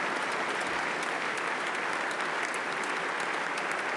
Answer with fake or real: real